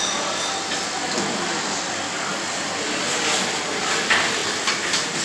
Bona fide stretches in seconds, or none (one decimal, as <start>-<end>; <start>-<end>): 0.0-5.2